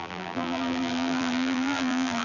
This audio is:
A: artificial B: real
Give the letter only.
A